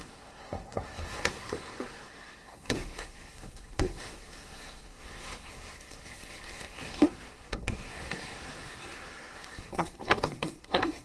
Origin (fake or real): fake